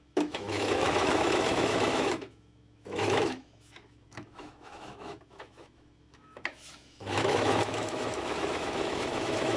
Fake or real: fake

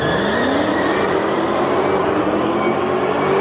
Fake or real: real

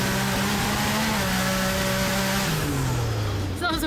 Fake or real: real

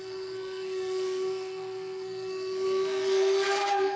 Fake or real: fake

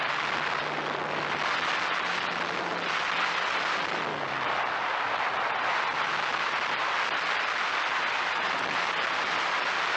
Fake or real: real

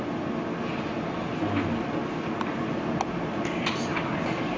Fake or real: real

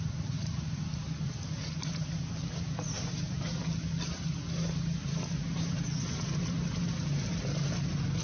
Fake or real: real